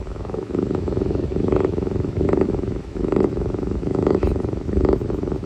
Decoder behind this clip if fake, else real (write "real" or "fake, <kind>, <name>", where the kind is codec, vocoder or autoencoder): fake, autoencoder, DAC-VAE